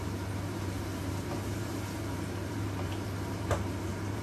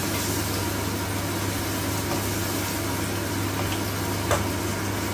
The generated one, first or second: first